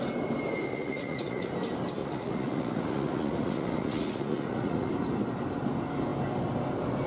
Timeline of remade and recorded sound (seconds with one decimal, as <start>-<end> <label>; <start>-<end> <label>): 0.0-0.7 recorded; 0.7-1.5 remade; 1.5-2.0 recorded; 2.0-4.9 remade; 4.9-7.1 recorded